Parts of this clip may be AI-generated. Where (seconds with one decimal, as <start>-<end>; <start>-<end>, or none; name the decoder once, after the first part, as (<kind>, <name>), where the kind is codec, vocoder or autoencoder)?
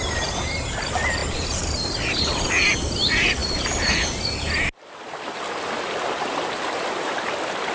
1.2-2.0 (vocoder, BigVGAN v2)